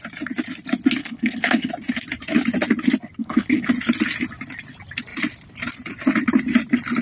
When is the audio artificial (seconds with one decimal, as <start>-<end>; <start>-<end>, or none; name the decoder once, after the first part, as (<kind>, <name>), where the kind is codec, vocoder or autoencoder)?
1.0-1.7 (codec, HILCodec); 3.2-3.7